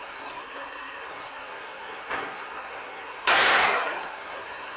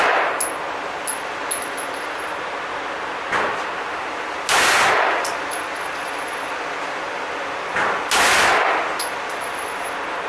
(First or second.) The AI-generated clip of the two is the first